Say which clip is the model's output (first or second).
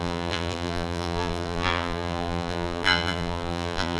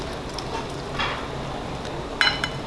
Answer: first